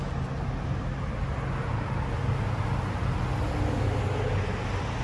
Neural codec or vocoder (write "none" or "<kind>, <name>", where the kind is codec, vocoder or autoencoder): none